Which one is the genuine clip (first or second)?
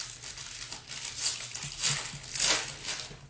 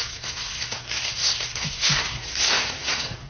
first